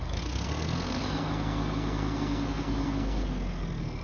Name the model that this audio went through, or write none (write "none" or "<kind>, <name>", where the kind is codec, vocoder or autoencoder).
codec, SNAC